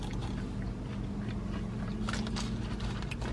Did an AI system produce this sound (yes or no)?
no